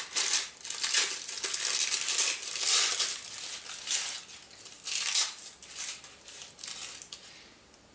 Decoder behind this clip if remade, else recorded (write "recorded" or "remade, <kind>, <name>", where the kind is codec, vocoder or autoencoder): recorded